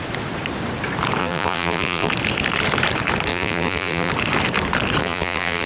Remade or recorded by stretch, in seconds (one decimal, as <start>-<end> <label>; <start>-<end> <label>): 0.0-1.2 recorded; 1.2-2.1 remade; 2.1-3.3 recorded; 3.3-4.1 remade; 4.1-5.0 recorded; 5.0-5.7 remade